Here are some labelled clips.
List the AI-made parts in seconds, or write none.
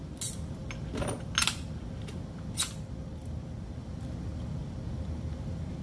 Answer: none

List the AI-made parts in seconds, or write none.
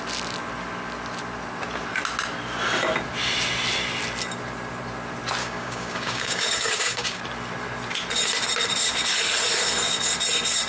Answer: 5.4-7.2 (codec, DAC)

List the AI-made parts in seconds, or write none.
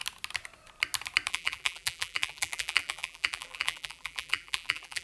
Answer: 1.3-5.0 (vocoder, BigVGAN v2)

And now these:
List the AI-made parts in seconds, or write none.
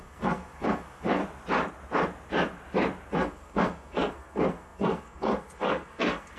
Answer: 0.0-1.2 (codec, SNAC); 3.1-6.4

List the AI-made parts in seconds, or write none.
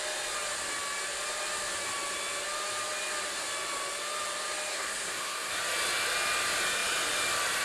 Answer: 4.7-5.5 (codec, SNAC)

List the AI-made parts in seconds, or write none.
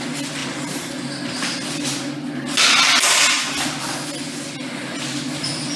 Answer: none